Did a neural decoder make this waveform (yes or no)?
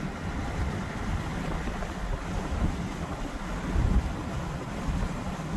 no